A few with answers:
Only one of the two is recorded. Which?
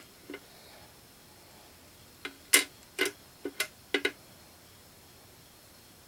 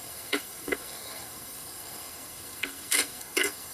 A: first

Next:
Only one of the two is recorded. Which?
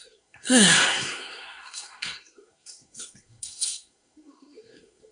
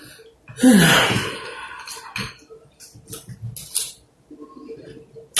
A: second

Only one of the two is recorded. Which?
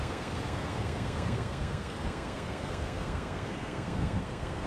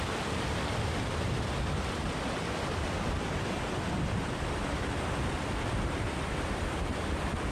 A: second